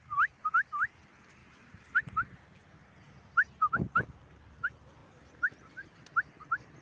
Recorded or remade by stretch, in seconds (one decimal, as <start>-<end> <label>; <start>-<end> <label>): 0.0-1.4 recorded; 1.4-2.0 remade; 2.0-5.0 recorded; 5.0-5.7 remade; 5.7-6.8 recorded